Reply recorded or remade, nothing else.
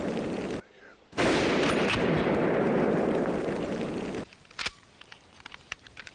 recorded